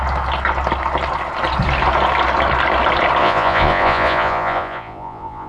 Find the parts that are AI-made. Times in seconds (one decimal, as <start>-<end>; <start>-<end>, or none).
3.2-5.5